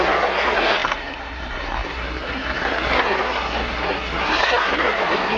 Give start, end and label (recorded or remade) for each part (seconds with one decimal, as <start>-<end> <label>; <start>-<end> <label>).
0.0-5.4 remade